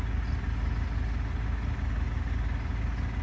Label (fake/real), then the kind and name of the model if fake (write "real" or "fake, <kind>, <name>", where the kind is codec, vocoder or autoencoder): real